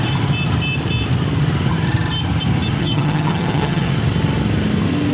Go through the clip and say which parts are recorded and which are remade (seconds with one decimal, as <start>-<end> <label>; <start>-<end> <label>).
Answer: 0.0-2.8 recorded; 2.8-3.9 remade; 3.9-5.1 recorded